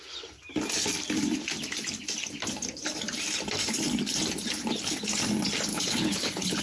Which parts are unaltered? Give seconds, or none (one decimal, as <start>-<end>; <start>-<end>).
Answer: 0.0-5.7

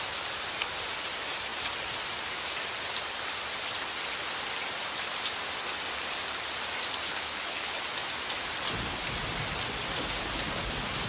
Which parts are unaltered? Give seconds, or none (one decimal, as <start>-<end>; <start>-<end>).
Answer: 0.0-7.1; 7.8-11.1

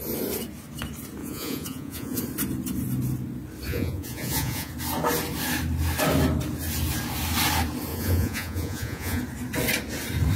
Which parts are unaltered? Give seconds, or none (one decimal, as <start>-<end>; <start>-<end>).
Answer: 0.0-1.2; 2.2-3.7; 4.7-7.9; 9.2-10.4

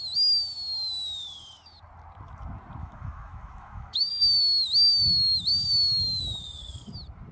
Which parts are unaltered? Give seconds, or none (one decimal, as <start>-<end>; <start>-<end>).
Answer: 0.0-2.8; 4.1-7.3

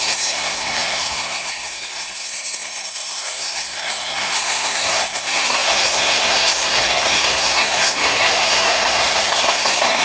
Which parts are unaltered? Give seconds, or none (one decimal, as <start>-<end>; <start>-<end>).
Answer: none